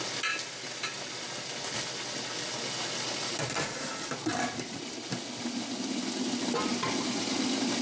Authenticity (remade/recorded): recorded